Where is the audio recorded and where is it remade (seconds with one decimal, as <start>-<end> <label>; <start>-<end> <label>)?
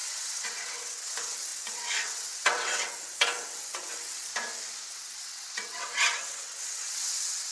0.0-4.3 remade; 4.3-4.9 recorded; 4.9-7.5 remade